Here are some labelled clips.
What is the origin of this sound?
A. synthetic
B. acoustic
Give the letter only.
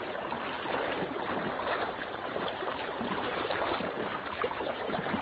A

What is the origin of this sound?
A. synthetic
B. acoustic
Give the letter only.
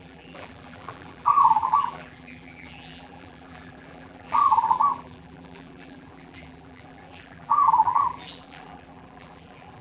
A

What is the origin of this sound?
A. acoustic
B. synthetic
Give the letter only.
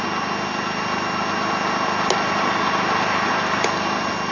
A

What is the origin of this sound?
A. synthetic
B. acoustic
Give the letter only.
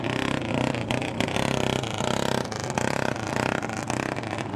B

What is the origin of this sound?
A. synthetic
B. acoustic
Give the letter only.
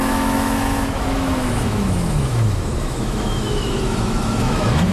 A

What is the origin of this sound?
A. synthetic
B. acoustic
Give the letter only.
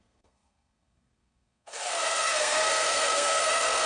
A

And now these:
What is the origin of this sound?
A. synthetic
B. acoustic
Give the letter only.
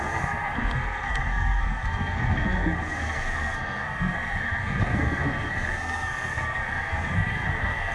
A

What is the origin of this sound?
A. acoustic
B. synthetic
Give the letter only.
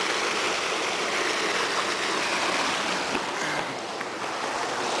A